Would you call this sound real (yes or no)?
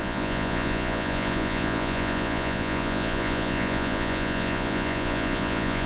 no